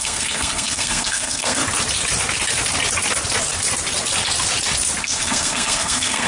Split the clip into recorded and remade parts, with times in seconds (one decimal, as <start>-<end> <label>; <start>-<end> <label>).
0.0-1.6 remade; 1.6-5.0 recorded; 5.0-6.3 remade